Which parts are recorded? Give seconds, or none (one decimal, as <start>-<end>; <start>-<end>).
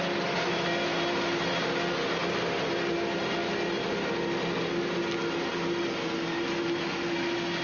0.0-7.6